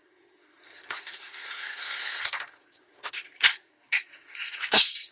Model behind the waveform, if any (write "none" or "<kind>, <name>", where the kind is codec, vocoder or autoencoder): codec, SNAC